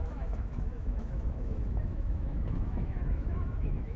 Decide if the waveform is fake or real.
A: fake